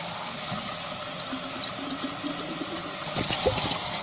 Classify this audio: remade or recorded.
recorded